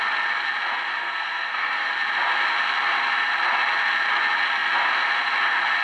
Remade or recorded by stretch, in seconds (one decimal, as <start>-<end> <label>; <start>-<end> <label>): 0.0-1.0 recorded; 1.0-1.9 remade; 1.9-5.8 recorded